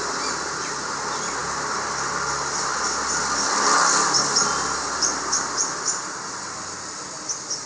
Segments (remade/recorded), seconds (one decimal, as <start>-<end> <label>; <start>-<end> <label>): 0.0-7.7 recorded